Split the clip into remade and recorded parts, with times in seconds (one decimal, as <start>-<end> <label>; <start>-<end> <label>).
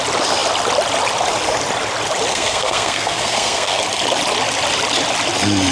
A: 0.0-2.3 recorded; 2.3-3.8 remade; 3.8-5.7 recorded